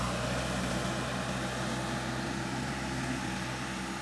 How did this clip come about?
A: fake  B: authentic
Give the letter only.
B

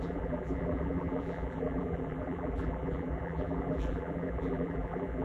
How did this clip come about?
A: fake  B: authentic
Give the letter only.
A